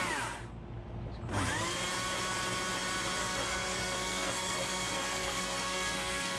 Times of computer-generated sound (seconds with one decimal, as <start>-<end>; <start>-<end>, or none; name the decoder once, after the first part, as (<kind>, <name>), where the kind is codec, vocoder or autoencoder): 3.2-6.4 (codec, SNAC)

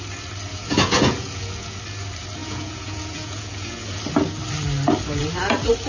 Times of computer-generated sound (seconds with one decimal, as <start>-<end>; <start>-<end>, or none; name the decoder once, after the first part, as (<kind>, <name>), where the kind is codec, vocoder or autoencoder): 0.5-1.8 (vocoder, Vocos); 2.4-4.0

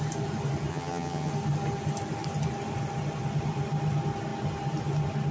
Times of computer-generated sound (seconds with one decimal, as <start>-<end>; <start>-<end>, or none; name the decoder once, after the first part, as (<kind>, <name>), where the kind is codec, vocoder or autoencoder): 0.7-1.3 (vocoder, HiFi-GAN)

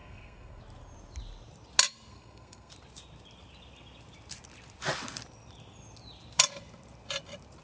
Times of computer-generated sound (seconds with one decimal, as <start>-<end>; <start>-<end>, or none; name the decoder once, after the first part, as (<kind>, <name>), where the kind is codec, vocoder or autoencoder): 0.0-0.6 (codec, SNAC); 2.1-2.7

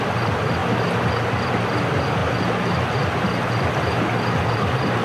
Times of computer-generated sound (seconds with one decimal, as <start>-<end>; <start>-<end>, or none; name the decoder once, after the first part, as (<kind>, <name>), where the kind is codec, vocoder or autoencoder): 2.2-3.5 (vocoder, BigVGAN v2)

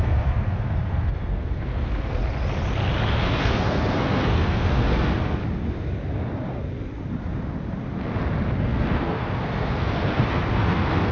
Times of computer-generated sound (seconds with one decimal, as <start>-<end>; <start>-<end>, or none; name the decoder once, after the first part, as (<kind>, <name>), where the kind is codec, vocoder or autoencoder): 0.0-2.2 (codec, SNAC); 3.1-5.4; 8.6-11.1

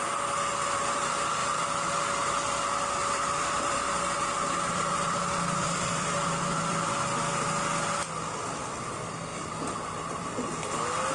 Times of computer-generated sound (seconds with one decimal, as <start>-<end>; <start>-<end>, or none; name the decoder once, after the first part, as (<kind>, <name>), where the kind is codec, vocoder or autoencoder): 1.4-2.0 (vocoder, BigVGAN v2); 3.0-6.8; 9.3-10.3